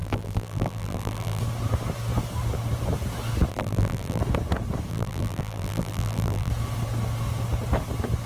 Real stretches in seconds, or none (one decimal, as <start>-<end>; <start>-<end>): 1.4-3.5; 4.2-4.9; 6.5-8.3